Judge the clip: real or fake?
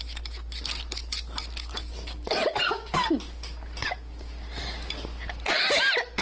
real